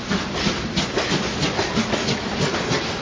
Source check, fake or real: real